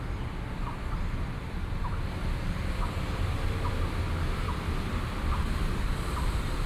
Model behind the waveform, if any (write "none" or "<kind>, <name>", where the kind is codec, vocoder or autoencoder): vocoder, BigVGAN v2